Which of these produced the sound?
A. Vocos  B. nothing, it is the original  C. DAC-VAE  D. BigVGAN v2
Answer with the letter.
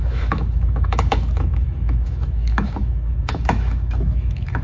C